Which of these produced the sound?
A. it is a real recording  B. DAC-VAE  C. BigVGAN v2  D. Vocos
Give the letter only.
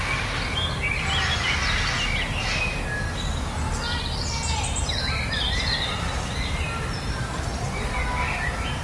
A